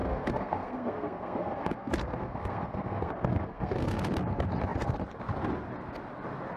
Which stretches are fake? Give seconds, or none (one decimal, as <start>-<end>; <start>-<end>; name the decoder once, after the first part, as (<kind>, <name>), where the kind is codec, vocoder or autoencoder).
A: 0.0-4.0 (codec, SNAC)